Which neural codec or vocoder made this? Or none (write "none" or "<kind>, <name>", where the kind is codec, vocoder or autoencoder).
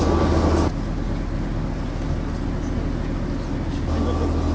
none